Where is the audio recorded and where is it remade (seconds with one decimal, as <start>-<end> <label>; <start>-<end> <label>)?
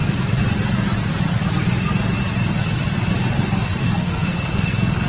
0.0-3.8 recorded; 3.8-5.1 remade